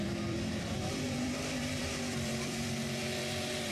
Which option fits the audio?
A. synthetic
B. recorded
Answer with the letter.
A